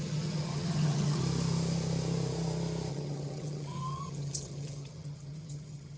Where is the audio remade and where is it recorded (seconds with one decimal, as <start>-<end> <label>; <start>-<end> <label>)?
0.0-1.2 remade; 1.2-2.9 recorded; 2.9-6.0 remade